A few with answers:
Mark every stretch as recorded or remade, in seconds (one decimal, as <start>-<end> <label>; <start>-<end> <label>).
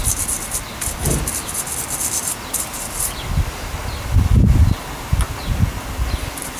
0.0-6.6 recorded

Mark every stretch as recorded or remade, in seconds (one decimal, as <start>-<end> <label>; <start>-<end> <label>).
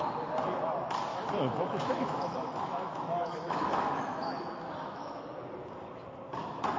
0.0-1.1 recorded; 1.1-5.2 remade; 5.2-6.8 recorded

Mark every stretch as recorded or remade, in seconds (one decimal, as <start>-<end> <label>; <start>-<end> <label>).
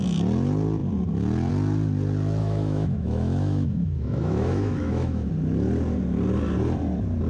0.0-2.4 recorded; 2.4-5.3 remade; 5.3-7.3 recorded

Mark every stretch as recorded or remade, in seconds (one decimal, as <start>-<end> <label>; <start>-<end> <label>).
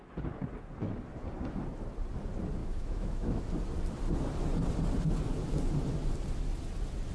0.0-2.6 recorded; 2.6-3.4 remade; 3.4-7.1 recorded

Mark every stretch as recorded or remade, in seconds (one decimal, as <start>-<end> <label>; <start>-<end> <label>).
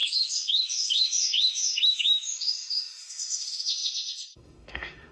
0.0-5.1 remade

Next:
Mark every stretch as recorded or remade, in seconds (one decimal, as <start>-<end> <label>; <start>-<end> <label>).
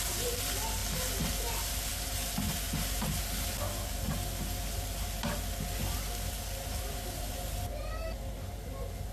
0.0-9.1 recorded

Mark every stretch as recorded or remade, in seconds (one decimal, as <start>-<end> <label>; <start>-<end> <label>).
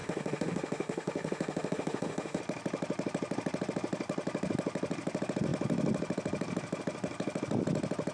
0.0-2.4 remade; 2.4-8.1 recorded